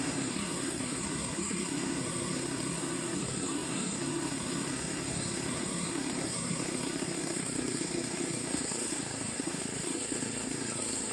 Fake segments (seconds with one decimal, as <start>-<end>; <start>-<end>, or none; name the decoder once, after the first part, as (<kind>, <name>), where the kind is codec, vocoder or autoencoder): 0.0-11.1 (codec, SNAC)